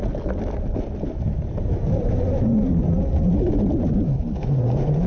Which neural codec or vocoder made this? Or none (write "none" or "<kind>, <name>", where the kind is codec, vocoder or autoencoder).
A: none